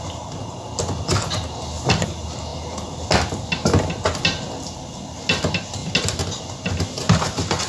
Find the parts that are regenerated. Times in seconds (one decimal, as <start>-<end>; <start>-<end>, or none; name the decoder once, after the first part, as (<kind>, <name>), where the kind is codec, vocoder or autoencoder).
none